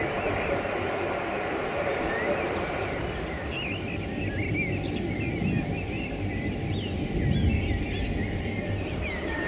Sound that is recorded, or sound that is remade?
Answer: recorded